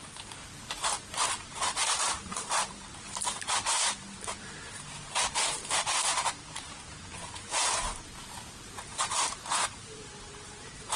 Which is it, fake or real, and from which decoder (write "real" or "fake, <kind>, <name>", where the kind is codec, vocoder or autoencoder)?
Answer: fake, vocoder, BigVGAN v2